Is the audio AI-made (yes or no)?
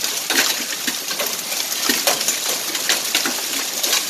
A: no